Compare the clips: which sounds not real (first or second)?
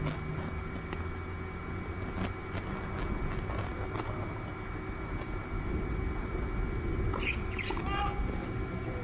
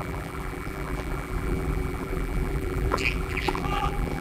second